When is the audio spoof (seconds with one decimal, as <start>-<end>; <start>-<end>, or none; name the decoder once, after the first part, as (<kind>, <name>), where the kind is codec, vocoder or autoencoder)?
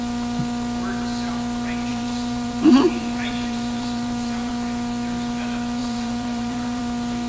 1.9-4.5 (vocoder, BigVGAN v2); 5.8-6.8